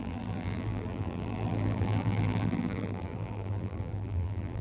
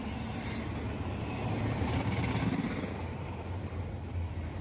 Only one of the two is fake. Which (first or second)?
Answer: first